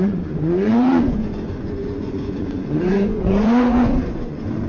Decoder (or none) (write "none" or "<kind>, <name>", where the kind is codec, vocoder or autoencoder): vocoder, Vocos